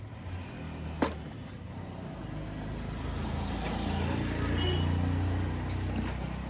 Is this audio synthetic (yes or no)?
no